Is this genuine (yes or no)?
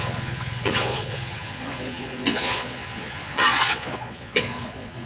no